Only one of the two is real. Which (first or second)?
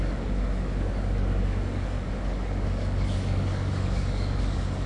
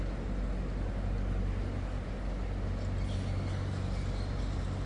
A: second